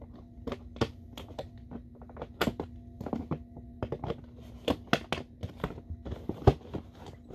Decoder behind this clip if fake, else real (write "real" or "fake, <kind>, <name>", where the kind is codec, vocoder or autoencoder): real